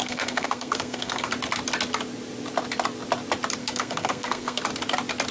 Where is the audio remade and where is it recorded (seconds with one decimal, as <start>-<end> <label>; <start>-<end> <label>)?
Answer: 0.0-1.3 remade; 1.3-3.6 recorded; 3.6-4.6 remade; 4.6-5.3 recorded